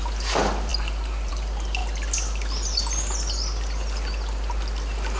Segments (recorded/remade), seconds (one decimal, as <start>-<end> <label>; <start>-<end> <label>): 0.0-5.2 recorded